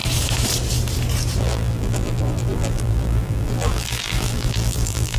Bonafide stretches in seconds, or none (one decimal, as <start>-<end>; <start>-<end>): 0.0-1.4